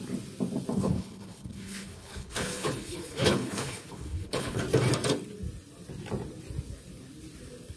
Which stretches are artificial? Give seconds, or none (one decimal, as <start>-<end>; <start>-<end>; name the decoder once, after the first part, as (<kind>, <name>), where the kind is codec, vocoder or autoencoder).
0.7-4.6 (codec, HILCodec)